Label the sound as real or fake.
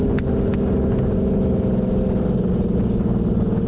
real